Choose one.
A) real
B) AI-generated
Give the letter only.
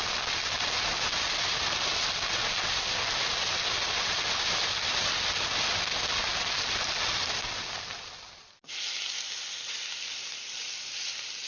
A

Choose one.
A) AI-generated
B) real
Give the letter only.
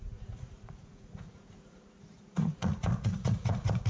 A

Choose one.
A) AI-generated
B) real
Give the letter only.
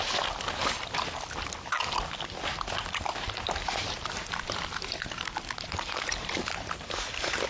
B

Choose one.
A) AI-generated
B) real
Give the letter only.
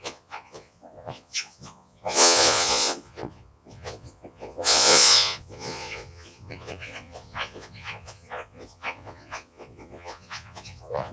A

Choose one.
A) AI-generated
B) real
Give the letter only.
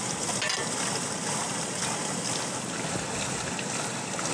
B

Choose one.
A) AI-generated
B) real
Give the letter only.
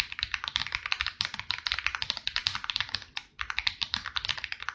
B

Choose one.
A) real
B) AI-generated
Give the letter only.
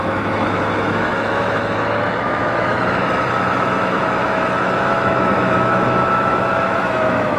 B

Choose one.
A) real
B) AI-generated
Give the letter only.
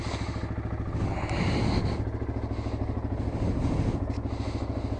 A